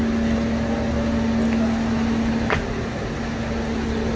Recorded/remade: recorded